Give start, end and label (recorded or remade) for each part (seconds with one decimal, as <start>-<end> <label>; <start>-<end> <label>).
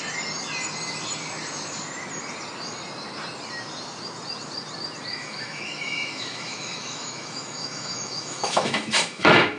0.0-5.1 recorded; 5.1-9.6 remade